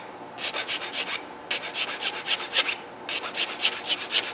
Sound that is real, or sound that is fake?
real